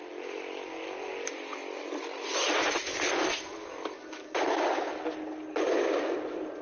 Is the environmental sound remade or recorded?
recorded